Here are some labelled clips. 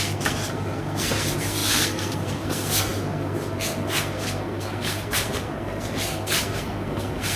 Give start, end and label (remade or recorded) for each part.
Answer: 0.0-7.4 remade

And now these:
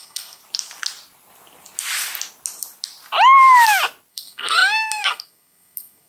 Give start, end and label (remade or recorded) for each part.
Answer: 0.0-0.4 remade; 0.4-4.1 recorded; 4.1-6.1 remade

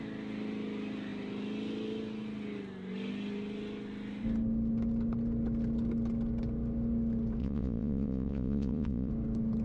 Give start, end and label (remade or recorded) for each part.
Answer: 0.0-7.4 recorded; 7.4-9.1 remade; 9.1-9.6 recorded

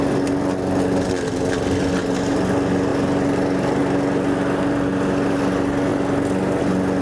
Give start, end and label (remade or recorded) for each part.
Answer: 0.0-7.0 recorded

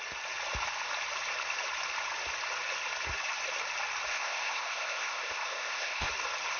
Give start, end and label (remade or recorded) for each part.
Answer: 0.0-4.1 recorded; 4.1-6.1 remade; 6.1-6.6 recorded

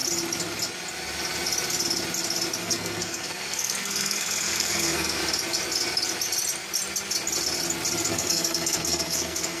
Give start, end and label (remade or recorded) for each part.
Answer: 0.0-2.6 recorded; 2.6-5.2 remade; 5.2-8.1 recorded; 8.1-9.6 remade

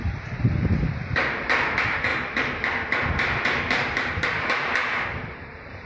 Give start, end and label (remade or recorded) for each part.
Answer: 0.0-2.1 recorded; 2.1-5.9 remade

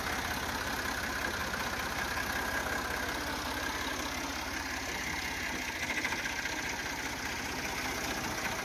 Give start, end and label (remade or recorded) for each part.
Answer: 0.0-8.6 recorded